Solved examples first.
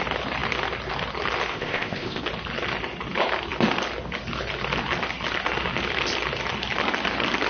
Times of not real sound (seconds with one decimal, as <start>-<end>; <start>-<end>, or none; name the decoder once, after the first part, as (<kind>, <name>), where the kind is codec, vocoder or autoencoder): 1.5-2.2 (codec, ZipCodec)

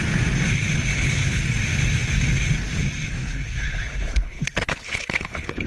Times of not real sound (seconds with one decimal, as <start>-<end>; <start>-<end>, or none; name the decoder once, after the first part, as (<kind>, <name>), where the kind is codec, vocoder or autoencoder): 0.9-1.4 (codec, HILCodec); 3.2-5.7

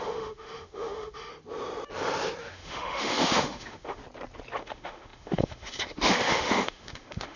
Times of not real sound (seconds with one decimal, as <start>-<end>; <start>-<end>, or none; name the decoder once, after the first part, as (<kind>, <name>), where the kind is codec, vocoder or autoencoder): 0.0-1.3 (autoencoder, DAC-VAE); 2.4-4.0; 4.6-7.4